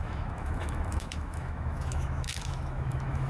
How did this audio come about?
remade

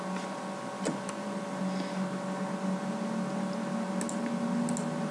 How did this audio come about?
recorded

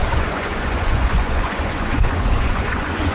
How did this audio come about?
remade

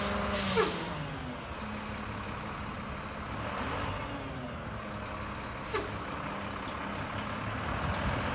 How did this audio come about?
recorded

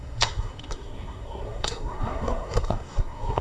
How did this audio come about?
remade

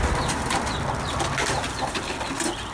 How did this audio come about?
recorded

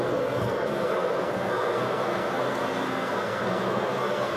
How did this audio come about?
remade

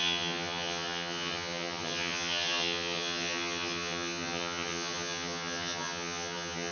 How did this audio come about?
remade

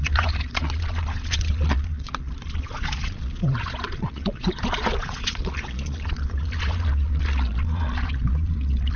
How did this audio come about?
remade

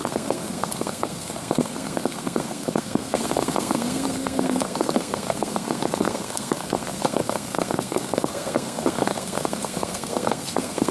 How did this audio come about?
remade